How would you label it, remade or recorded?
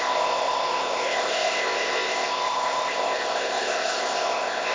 remade